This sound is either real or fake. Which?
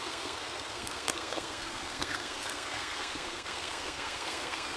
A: fake